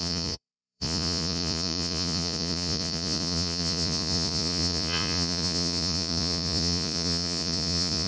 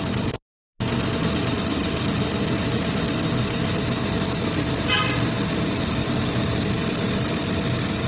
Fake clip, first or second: first